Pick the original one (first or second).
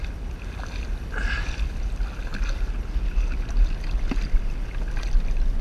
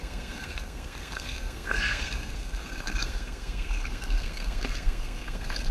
first